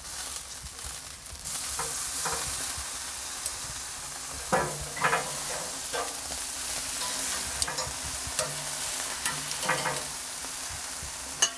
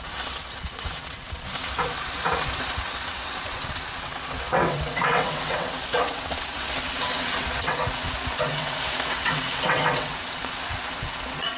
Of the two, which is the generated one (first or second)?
second